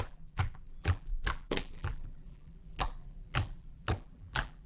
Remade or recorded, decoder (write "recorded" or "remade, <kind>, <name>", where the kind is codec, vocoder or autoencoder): remade, vocoder, BigVGAN v2